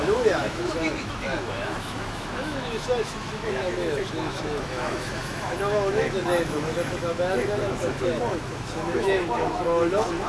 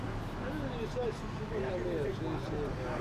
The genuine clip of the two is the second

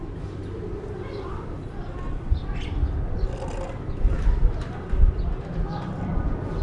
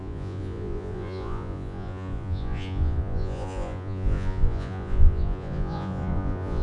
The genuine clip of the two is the first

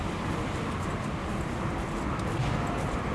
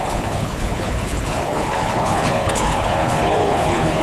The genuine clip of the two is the first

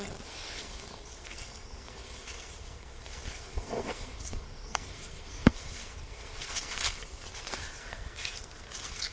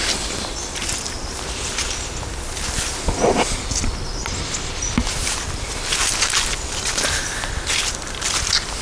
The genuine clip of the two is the second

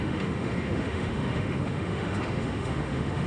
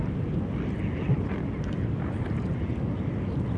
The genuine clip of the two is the second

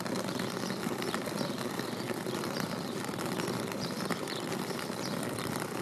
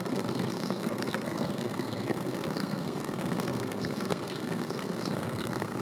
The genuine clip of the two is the first